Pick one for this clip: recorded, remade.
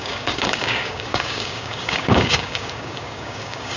remade